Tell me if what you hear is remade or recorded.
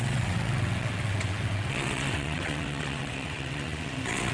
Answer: remade